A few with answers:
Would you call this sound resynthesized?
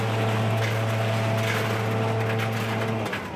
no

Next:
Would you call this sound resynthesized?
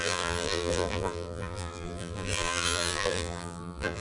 yes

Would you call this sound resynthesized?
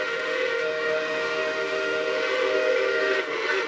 yes